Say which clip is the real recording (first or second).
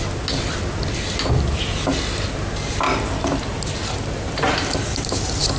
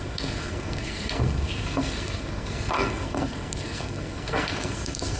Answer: first